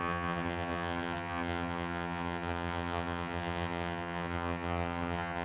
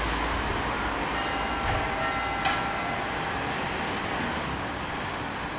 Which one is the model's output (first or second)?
first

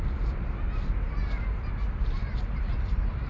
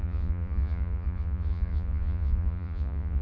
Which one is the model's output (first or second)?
second